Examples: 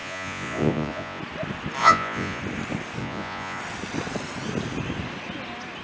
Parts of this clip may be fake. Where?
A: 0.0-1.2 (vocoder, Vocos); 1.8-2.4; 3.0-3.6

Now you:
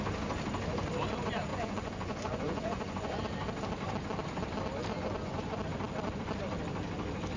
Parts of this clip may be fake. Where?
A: 1.5-3.2 (vocoder, Vocos); 4.9-5.6

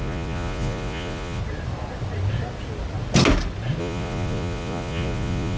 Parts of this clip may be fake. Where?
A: 0.0-1.4 (vocoder, Vocos); 3.8-5.6

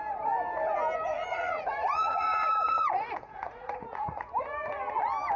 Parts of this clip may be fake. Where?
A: 1.1-4.3 (vocoder, Vocos)

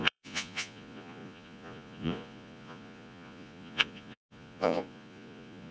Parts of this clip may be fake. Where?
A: 0.0-5.7 (vocoder, Vocos)

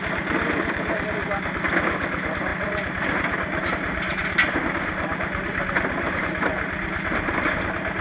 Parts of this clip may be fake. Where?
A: none

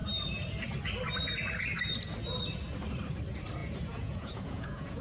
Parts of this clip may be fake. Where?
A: 3.6-5.0 (vocoder, Vocos)

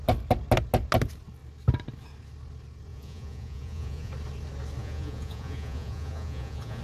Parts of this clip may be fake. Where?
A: 2.9-4.1 (vocoder, Vocos); 4.8-6.8